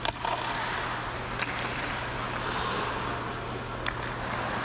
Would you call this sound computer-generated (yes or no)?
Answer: no